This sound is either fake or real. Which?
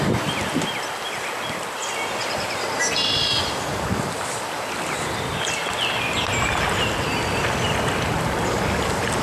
real